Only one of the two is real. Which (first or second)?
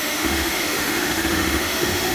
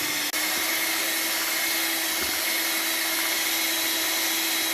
second